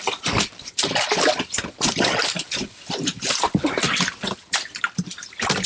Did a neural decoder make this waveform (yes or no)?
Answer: no